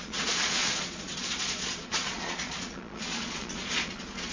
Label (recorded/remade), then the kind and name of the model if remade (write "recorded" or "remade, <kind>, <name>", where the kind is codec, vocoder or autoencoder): remade, vocoder, Vocos